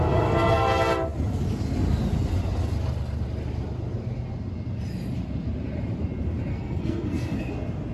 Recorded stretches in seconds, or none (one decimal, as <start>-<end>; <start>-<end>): 0.0-6.5; 7.5-7.9